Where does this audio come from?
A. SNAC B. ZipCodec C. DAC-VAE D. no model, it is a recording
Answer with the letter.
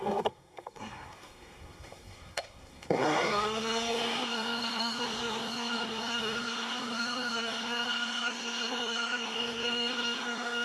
A